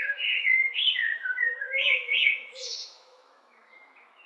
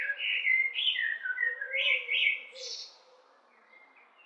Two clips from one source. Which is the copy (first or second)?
first